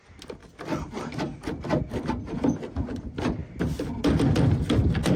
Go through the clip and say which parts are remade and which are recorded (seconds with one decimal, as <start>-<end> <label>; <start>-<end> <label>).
0.0-5.2 recorded